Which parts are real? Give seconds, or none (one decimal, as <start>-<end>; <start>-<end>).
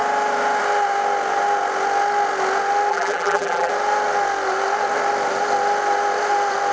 0.0-2.9; 3.7-6.7